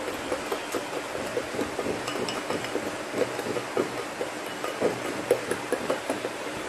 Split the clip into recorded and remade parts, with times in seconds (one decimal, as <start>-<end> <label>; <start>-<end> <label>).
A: 0.0-6.7 recorded